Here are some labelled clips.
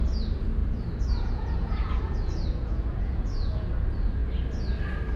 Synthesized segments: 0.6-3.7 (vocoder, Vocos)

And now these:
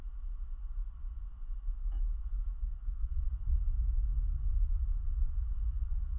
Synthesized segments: 2.2-3.2 (codec, SNAC)

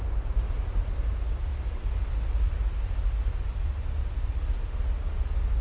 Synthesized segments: none

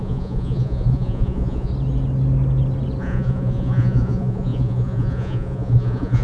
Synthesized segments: 0.0-1.7 (vocoder, Vocos); 3.0-6.2

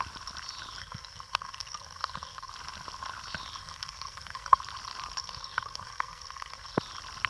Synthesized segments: 0.8-2.5 (codec, SNAC); 3.6-4.6; 5.2-6.8

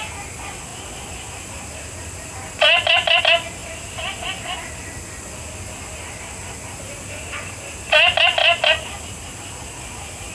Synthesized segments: none